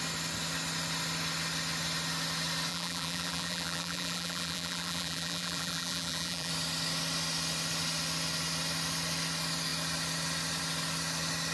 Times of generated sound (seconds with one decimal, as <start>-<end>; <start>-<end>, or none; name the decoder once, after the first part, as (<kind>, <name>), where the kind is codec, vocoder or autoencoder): 2.7-6.5 (vocoder, BigVGAN v2)